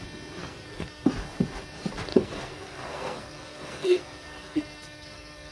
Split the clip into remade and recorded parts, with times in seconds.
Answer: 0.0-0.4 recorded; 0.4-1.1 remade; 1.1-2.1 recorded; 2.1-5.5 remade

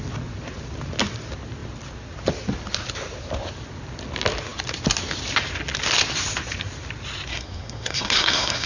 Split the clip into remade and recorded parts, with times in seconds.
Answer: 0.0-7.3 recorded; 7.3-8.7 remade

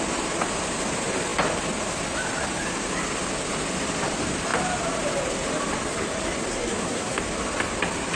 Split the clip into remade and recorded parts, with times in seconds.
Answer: 0.0-6.5 recorded; 6.5-7.2 remade; 7.2-8.2 recorded

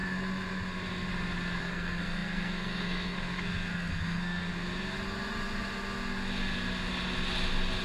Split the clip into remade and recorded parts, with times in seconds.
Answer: 0.0-1.6 recorded; 1.6-4.5 remade; 4.5-7.8 recorded

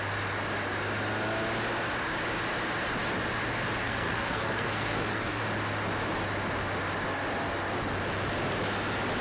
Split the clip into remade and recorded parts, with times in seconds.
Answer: 0.0-3.8 recorded; 3.8-5.4 remade; 5.4-9.2 recorded